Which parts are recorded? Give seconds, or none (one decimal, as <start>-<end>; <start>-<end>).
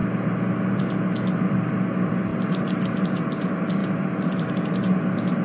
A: 0.0-5.4